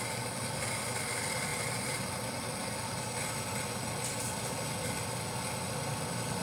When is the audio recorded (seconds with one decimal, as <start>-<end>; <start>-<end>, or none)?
0.0-6.4